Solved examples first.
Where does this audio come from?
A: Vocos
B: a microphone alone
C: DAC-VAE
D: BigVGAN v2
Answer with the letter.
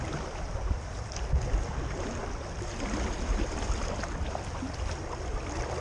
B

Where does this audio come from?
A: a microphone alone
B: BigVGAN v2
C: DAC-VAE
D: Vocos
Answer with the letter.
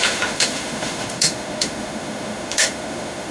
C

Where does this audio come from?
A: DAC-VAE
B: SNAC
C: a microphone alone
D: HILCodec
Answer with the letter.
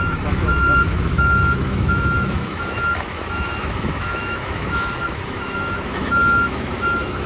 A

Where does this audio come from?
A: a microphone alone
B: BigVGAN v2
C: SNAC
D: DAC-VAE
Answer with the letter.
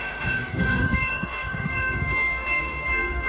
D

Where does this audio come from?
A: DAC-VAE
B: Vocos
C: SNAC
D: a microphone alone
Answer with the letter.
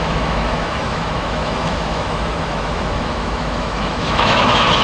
A